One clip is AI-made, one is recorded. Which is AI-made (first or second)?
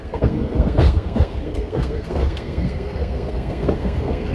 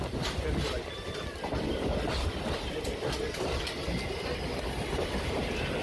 first